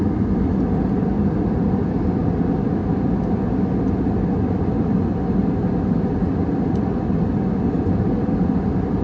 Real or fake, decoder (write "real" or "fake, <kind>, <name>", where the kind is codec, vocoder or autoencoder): real